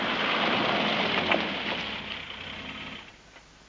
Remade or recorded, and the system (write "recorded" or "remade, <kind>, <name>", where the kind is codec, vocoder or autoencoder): recorded